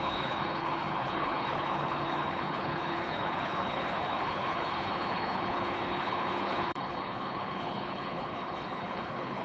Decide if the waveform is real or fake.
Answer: fake